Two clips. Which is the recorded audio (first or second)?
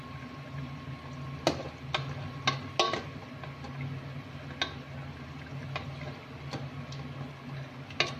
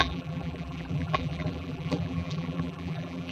first